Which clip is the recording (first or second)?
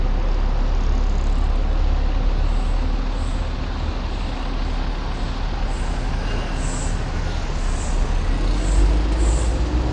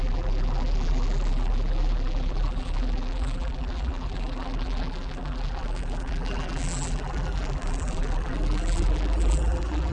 first